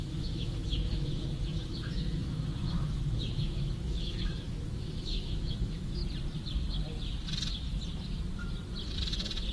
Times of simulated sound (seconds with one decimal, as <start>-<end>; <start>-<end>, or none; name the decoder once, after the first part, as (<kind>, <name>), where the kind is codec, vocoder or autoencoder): 0.0-6.0 (autoencoder, DAC-VAE)